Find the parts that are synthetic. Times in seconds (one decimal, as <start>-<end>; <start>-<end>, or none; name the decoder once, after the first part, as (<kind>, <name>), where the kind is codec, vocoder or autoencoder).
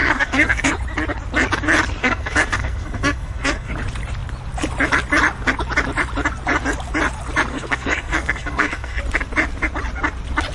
0.0-0.7 (codec, SNAC); 2.0-3.7; 7.5-9.0